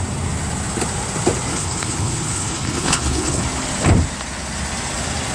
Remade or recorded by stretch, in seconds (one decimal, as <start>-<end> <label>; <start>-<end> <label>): 0.0-1.5 recorded; 1.5-3.4 remade; 3.4-5.3 recorded